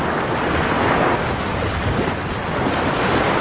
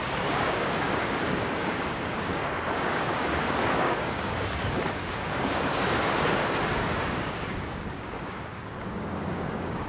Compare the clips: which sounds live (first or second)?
first